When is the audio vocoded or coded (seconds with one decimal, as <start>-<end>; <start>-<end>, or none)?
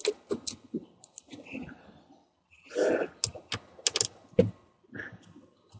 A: none